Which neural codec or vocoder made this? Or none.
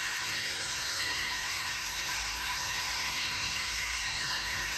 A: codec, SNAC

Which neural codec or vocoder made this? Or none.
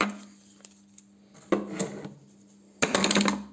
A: none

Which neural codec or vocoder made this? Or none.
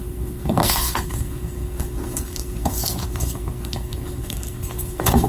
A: codec, SNAC